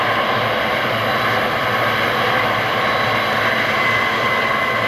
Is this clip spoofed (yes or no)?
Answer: no